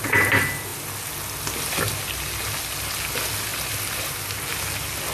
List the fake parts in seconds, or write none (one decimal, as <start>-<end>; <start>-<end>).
none